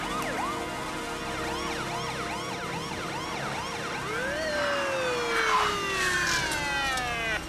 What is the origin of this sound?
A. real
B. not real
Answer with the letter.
A